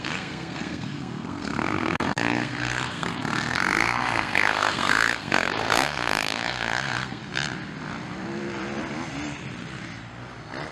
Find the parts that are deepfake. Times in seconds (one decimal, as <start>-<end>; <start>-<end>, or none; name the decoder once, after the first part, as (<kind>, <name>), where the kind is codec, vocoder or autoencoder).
0.0-7.2 (codec, SNAC)